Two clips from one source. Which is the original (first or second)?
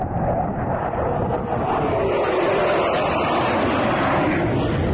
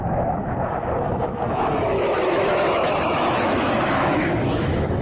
first